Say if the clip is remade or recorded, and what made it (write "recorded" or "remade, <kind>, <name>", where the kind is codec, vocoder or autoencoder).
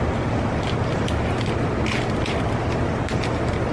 recorded